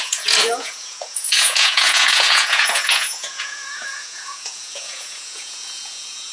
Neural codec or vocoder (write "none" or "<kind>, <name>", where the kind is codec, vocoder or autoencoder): vocoder, Vocos